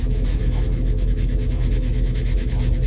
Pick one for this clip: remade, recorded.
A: remade